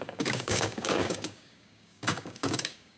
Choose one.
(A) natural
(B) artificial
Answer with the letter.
B